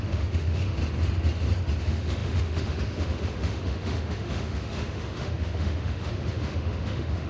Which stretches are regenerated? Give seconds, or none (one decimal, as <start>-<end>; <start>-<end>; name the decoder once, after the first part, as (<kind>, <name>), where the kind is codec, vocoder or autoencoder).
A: 0.0-0.8 (autoencoder, DAC-VAE); 1.8-7.3